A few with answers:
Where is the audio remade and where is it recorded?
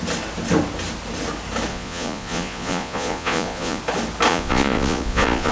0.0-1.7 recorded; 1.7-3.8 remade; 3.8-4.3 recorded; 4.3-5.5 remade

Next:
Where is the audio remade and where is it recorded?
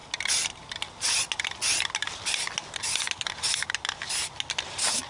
0.0-5.1 recorded